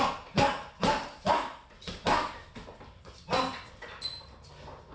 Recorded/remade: recorded